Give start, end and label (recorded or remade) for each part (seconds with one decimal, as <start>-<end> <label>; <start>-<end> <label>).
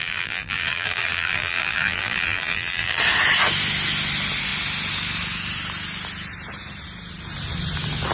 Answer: 0.0-3.0 remade; 3.0-8.1 recorded